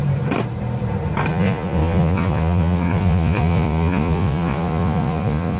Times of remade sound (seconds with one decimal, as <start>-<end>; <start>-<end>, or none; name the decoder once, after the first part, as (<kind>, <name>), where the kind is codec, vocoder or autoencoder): 1.3-5.6 (vocoder, Vocos)